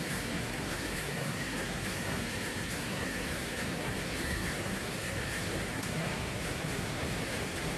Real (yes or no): no